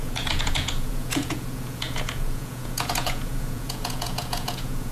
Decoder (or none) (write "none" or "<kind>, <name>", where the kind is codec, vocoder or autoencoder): vocoder, Vocos